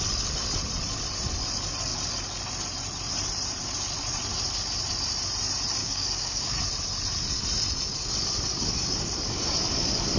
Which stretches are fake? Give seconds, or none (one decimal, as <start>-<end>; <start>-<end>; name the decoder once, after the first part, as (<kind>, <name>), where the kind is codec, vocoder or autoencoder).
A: 5.8-6.6 (codec, DAC)